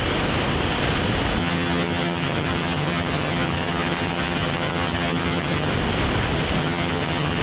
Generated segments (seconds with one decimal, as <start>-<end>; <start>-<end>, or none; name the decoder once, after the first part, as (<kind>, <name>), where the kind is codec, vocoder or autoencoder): 1.4-5.7 (vocoder, HiFi-GAN); 6.6-7.4